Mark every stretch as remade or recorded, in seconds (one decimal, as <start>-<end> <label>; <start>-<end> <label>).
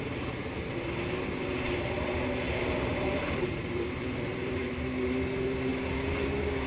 0.0-2.9 recorded; 2.9-4.7 remade; 4.7-6.7 recorded